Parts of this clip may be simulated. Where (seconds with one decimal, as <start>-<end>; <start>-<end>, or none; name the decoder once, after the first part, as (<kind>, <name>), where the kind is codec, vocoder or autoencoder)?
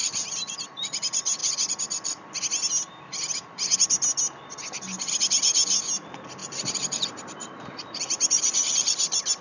0.0-0.6 (vocoder, BigVGAN v2); 6.4-9.4